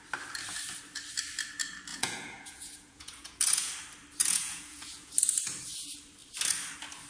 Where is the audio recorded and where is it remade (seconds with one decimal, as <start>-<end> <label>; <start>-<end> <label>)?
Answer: 0.0-1.9 recorded; 1.9-3.7 remade; 3.7-4.2 recorded; 4.2-5.1 remade; 5.1-7.1 recorded